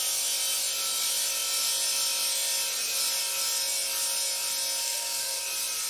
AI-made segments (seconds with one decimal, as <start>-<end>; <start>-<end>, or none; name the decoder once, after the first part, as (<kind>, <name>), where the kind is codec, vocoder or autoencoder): 4.8-5.4 (codec, SNAC)